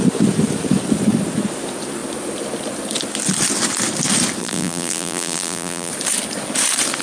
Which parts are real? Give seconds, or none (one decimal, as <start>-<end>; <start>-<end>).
0.0-4.4; 5.9-7.0